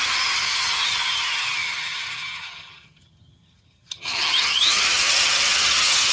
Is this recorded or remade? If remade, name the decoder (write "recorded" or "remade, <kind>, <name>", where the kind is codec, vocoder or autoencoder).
remade, vocoder, HiFi-GAN